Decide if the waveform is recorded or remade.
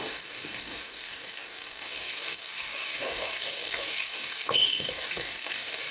remade